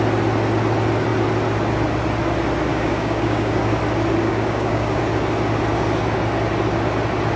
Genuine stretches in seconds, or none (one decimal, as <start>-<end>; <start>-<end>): 0.0-2.7; 3.8-4.2; 5.0-7.4